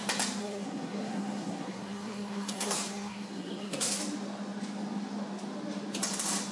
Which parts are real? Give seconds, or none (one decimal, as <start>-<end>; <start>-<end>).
0.0-0.4; 4.0-6.5